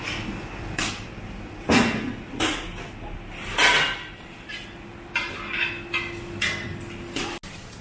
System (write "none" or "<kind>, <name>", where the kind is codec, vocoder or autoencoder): none